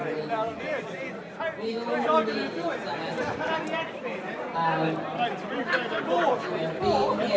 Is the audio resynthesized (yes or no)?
no